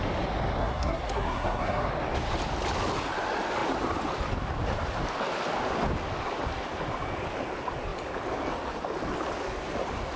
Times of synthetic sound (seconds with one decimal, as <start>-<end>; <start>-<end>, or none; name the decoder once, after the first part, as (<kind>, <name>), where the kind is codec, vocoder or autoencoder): 0.6-1.9 (codec, SNAC)

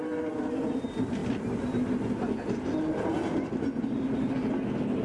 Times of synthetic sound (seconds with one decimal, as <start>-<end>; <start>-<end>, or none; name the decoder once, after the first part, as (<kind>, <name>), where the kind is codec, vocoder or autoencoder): none

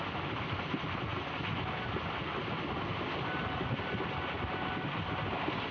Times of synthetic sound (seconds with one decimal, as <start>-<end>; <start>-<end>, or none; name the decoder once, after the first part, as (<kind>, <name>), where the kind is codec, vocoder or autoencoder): none

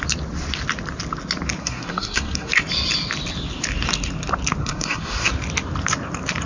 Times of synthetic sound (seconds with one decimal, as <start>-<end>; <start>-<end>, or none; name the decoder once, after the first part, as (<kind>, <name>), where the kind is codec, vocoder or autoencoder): 1.6-2.5 (codec, SNAC); 4.6-5.3